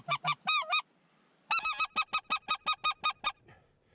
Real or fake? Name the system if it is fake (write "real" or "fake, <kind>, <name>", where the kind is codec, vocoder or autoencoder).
real